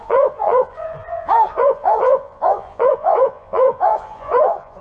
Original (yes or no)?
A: no